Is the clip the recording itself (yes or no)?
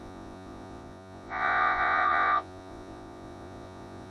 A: no